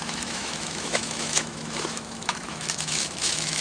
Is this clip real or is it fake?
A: fake